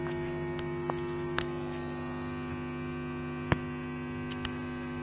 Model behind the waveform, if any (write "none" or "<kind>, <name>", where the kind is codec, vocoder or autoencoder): none